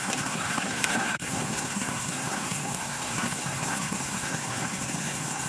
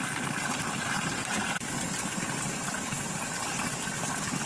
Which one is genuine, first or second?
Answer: second